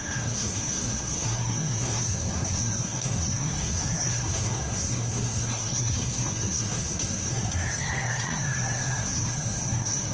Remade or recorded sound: remade